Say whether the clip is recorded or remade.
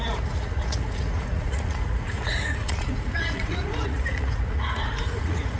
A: remade